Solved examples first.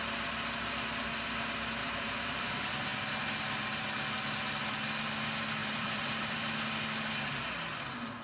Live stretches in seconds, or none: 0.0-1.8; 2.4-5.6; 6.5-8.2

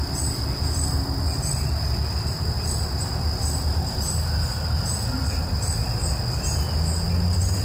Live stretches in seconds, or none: 0.0-7.6

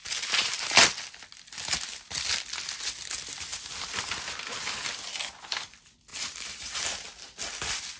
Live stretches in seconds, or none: 0.9-6.1; 6.8-8.0